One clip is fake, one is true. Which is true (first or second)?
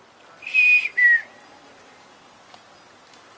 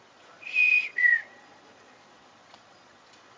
first